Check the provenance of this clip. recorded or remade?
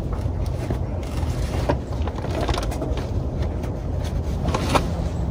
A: recorded